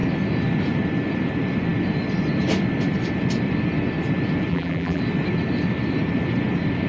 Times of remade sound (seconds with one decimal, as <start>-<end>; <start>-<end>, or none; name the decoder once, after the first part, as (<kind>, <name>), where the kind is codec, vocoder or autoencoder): 4.5-5.0 (vocoder, BigVGAN v2)